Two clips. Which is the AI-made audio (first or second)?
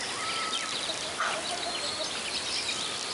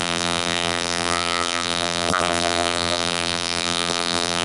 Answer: second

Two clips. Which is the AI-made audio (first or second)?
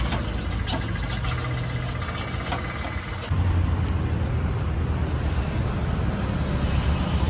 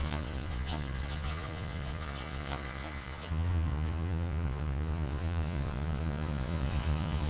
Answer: second